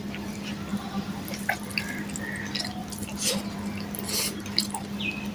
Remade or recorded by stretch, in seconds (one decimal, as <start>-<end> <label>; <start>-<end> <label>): 0.0-0.7 recorded; 0.7-1.7 remade; 1.7-5.3 recorded